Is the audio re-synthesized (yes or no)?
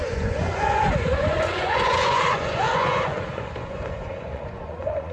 yes